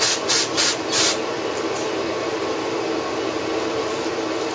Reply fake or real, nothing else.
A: real